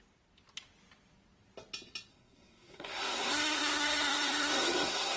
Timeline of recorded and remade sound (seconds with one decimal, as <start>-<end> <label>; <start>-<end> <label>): 0.0-2.1 recorded; 2.1-5.2 remade